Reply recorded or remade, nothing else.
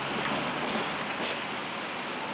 recorded